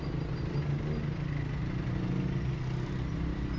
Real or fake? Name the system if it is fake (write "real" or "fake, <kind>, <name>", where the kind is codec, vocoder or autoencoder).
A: real